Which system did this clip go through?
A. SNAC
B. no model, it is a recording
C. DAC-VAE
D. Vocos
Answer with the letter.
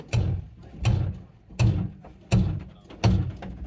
B